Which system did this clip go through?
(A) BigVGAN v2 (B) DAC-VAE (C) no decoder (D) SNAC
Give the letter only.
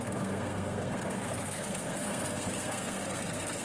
D